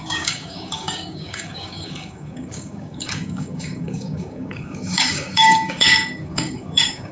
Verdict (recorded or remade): remade